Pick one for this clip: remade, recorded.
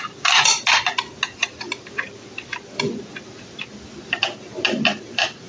recorded